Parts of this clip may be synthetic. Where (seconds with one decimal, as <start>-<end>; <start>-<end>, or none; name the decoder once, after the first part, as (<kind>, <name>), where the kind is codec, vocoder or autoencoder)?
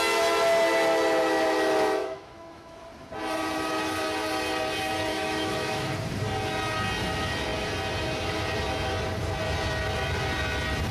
2.0-2.8 (autoencoder, DAC-VAE); 5.1-5.9